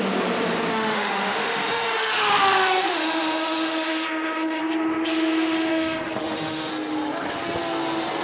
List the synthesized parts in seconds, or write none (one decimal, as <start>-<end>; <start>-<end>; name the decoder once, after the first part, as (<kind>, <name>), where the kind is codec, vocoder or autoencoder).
0.7-4.6 (autoencoder, DAC-VAE); 5.7-6.7